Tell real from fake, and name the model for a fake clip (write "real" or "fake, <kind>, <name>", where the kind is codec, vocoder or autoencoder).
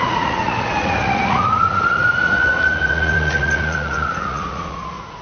fake, vocoder, Vocos